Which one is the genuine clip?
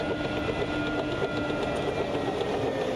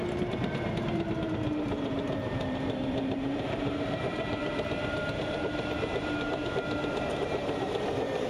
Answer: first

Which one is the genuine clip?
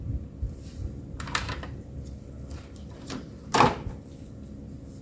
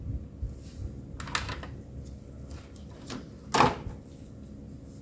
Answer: second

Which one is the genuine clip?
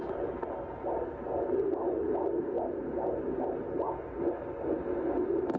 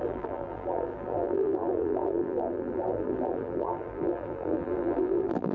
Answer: first